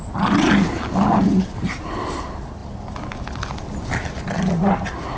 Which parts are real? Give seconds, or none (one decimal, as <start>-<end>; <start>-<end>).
0.0-5.2

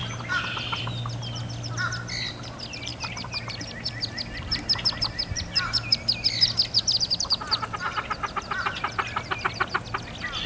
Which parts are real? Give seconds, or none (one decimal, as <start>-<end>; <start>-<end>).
0.0-10.5

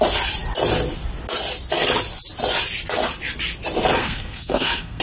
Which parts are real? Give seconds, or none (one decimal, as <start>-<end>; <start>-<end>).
0.0-4.0